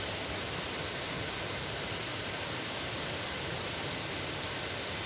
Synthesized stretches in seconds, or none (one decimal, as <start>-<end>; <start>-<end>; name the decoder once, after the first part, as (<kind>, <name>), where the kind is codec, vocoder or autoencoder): none